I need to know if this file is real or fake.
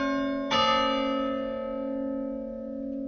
real